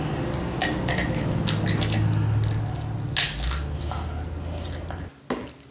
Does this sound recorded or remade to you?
recorded